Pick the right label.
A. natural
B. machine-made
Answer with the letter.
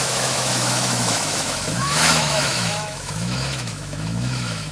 B